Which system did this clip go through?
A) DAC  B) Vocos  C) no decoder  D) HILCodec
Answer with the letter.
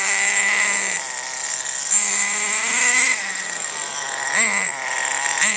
C